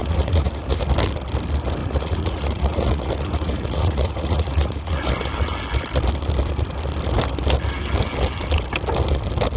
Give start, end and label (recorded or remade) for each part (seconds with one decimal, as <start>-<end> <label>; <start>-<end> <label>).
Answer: 0.0-0.8 remade; 0.8-1.8 recorded; 1.8-5.1 remade; 5.1-9.6 recorded